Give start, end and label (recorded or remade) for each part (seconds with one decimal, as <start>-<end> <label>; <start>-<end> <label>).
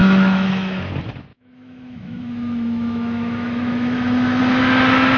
0.0-0.9 remade; 0.9-1.3 recorded; 1.3-4.4 remade; 4.4-5.2 recorded